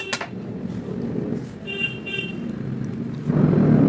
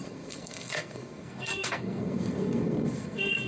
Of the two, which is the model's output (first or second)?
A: second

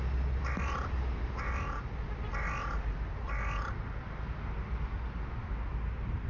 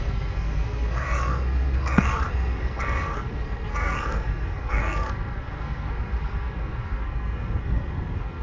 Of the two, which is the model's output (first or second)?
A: second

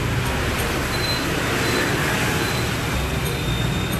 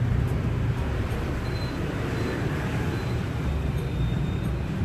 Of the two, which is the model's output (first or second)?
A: second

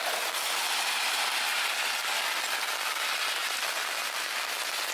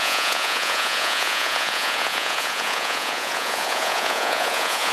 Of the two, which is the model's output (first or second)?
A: second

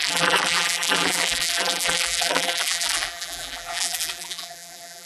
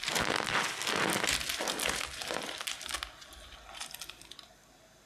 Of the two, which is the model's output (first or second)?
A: first